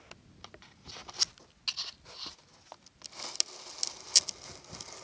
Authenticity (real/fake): real